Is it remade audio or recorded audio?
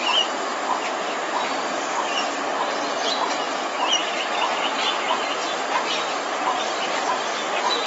recorded